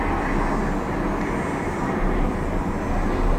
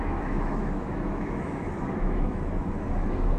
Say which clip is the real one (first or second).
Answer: first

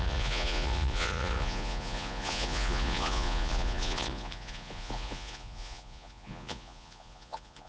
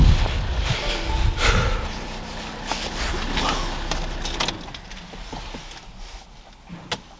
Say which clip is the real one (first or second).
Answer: second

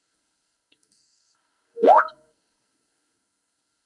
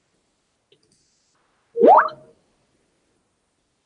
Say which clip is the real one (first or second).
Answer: second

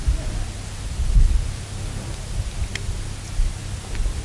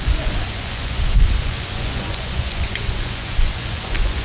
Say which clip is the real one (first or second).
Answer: first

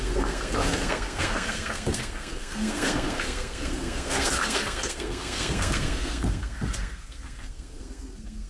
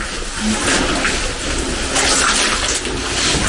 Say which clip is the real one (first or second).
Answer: second